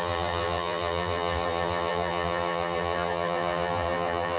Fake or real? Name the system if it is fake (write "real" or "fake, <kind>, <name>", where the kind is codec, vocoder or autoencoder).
fake, vocoder, BigVGAN v2